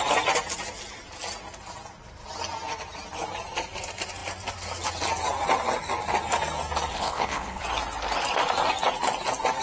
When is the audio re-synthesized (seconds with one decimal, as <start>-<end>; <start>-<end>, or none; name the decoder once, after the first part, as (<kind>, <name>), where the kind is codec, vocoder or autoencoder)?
6.9-7.6 (codec, HILCodec)

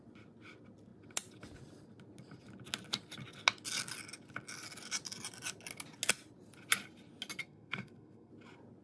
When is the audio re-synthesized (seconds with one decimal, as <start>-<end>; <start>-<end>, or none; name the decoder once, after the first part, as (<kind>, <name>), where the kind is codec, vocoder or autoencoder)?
7.4-8.3 (codec, SNAC)

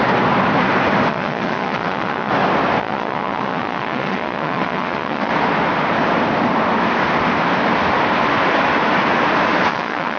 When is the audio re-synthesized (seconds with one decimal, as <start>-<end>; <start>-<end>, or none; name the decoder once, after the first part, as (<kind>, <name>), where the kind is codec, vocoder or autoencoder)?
1.1-2.3 (vocoder, Vocos); 2.8-5.3; 9.7-10.2

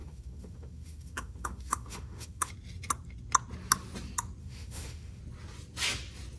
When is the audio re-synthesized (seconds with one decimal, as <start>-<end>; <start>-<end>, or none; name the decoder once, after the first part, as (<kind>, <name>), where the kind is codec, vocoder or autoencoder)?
0.0-2.5 (autoencoder, DAC-VAE); 4.4-5.2

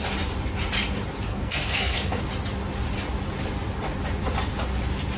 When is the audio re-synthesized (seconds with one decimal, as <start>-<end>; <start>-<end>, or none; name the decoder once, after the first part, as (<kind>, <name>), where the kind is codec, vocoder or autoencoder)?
1.3-2.2 (codec, SNAC)

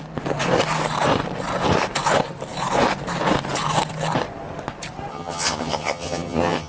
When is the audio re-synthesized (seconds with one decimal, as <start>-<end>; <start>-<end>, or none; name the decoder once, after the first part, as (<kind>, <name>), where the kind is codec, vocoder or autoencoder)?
5.1-6.7 (vocoder, HiFi-GAN)

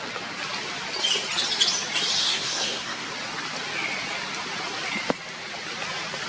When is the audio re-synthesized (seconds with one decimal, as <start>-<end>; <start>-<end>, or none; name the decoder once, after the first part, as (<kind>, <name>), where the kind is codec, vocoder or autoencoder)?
2.2-3.1 (codec, SNAC)